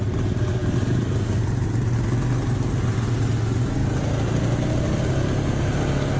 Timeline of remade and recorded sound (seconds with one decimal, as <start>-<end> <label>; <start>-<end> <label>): 0.0-0.6 recorded; 0.6-1.7 remade; 1.7-6.2 recorded